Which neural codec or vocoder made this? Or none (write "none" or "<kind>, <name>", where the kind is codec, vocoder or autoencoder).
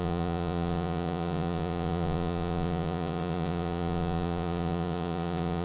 vocoder, Vocos